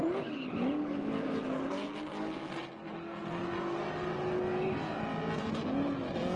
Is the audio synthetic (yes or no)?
no